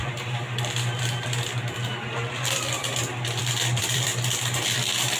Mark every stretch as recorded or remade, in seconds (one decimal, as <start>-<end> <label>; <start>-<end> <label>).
0.0-1.8 remade; 1.8-3.4 recorded; 3.4-4.1 remade; 4.1-5.2 recorded